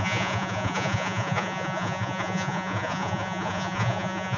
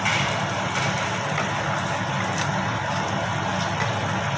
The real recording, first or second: second